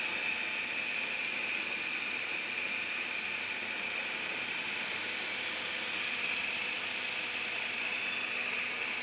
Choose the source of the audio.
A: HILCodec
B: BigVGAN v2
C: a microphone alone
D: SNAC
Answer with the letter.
C